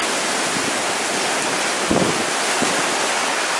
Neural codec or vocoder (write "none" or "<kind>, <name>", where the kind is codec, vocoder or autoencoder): none